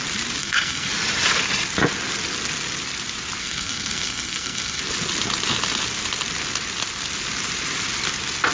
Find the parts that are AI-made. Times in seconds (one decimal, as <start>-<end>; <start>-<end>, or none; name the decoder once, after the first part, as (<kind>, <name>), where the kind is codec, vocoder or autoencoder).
0.4-0.9 (codec, SNAC); 3.4-4.8